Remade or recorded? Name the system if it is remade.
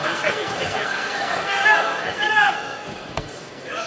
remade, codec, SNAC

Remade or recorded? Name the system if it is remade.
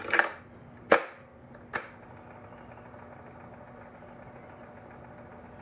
recorded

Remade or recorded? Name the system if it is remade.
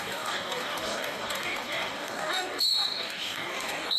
remade, codec, DAC